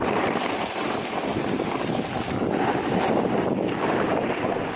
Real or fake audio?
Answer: real